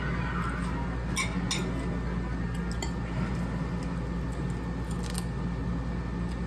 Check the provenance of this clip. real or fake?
real